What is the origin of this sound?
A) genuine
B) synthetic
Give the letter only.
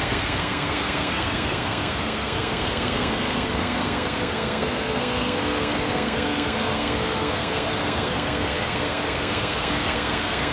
B